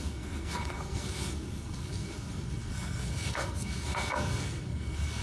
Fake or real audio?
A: fake